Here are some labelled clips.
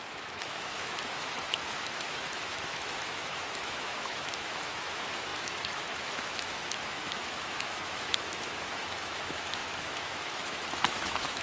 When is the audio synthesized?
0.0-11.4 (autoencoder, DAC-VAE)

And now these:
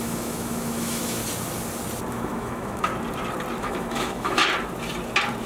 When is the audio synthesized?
0.0-1.2 (autoencoder, DAC-VAE); 2.1-2.9; 3.6-4.4